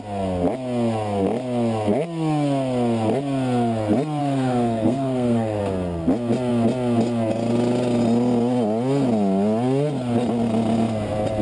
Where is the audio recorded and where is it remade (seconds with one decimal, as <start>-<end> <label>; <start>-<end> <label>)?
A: 0.0-4.2 recorded; 4.2-5.6 remade; 5.6-11.4 recorded

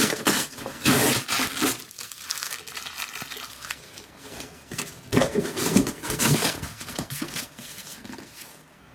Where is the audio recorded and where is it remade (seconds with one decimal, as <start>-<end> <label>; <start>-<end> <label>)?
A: 0.0-1.0 remade; 1.0-1.9 recorded; 1.9-2.6 remade; 2.6-3.5 recorded; 3.5-8.9 remade